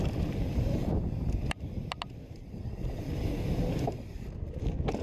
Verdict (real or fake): real